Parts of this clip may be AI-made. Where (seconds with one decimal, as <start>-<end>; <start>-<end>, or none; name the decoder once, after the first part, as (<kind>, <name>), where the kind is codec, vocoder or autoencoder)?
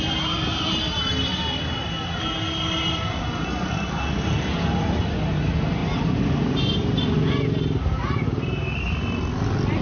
none